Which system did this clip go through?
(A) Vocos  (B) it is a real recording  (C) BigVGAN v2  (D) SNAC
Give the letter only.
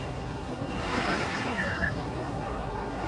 D